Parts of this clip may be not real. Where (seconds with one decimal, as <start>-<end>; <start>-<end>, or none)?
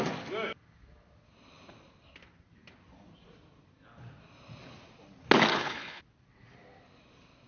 5.5-6.0